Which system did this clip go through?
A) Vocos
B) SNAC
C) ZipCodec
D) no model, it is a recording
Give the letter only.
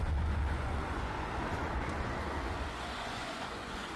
A